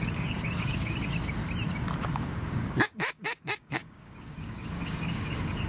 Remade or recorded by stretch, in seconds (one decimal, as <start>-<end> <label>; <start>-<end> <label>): 0.0-1.4 remade; 1.4-2.0 recorded; 2.0-5.7 remade